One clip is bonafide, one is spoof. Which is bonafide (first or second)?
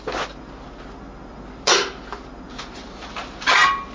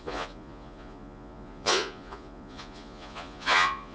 first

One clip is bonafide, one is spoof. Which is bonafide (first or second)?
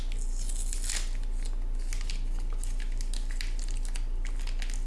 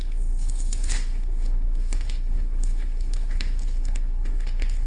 first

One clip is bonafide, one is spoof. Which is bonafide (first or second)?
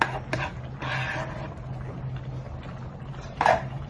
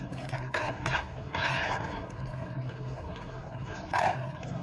first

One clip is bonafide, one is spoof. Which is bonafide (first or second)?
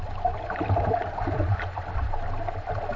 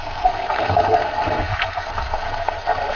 first